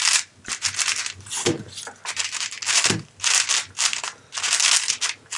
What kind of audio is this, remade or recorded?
recorded